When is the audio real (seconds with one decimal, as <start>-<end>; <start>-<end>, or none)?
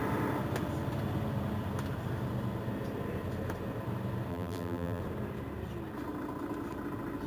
0.0-4.3; 5.0-7.3